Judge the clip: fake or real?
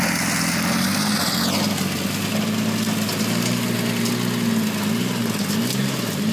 real